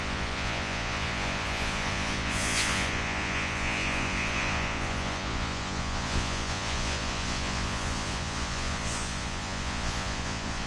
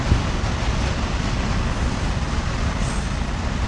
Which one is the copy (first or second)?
first